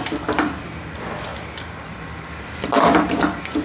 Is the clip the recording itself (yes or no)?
yes